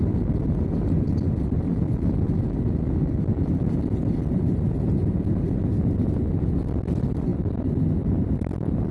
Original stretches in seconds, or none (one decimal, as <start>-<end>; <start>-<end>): 0.0-8.9